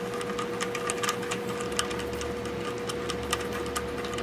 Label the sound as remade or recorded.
recorded